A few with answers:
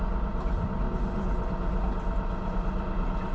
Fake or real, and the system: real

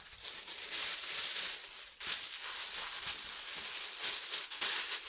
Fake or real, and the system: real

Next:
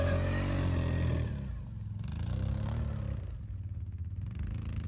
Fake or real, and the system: real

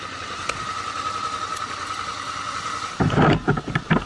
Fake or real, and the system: fake, vocoder, BigVGAN v2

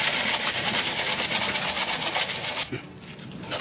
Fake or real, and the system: real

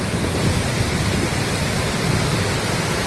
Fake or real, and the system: fake, vocoder, BigVGAN v2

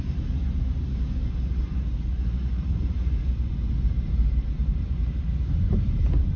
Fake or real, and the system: fake, vocoder, BigVGAN v2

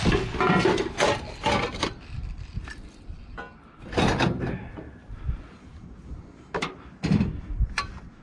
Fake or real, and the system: real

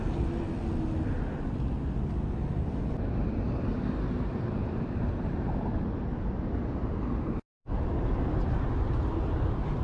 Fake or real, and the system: real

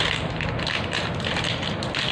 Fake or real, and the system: real